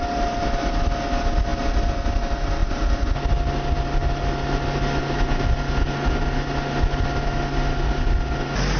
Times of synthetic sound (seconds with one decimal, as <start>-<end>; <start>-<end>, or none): none